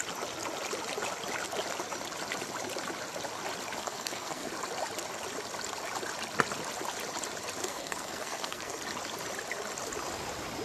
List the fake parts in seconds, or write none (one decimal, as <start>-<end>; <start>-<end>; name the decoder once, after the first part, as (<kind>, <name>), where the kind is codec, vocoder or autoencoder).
3.8-4.5 (codec, SNAC); 7.6-8.8

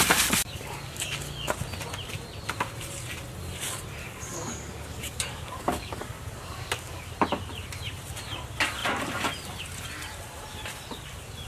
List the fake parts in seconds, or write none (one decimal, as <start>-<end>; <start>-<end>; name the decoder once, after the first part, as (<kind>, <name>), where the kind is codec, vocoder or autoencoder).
0.4-1.5 (codec, DAC); 4.0-7.1

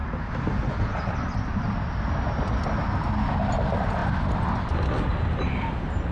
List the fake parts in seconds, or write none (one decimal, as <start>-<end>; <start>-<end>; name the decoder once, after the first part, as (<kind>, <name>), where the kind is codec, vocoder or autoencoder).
0.0-0.6 (vocoder, BigVGAN v2)

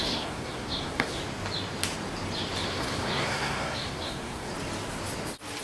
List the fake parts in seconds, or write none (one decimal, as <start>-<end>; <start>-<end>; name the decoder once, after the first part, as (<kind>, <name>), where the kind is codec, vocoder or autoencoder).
0.0-1.2 (codec, SNAC); 2.7-4.5